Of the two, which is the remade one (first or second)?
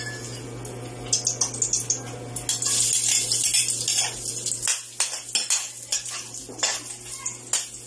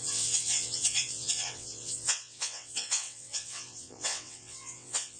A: second